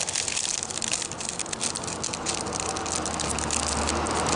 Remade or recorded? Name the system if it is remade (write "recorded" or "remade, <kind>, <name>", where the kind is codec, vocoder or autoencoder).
recorded